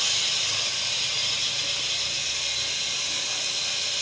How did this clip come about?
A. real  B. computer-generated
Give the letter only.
A